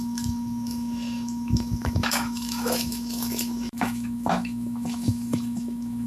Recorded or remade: remade